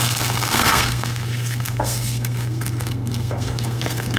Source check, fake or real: fake